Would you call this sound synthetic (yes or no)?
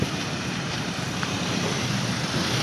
yes